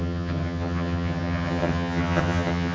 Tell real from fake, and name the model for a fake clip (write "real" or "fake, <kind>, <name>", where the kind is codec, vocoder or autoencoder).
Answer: fake, vocoder, HiFi-GAN